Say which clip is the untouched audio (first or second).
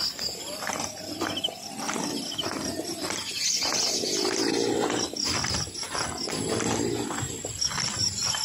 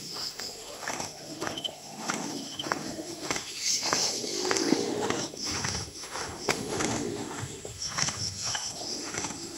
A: first